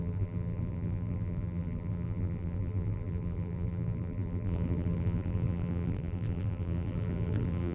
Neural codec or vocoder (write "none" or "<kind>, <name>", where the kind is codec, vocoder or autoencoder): vocoder, BigVGAN v2